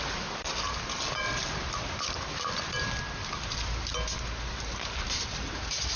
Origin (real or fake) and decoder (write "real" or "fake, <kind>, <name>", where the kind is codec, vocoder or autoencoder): real